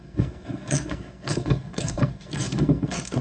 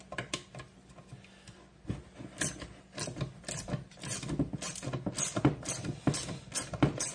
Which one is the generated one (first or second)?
first